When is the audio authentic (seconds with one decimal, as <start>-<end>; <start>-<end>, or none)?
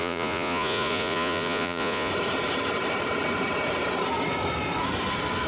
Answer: 2.1-5.5